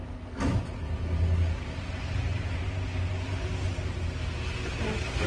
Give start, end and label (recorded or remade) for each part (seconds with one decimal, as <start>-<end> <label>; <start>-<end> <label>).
0.0-0.6 remade; 0.6-5.3 recorded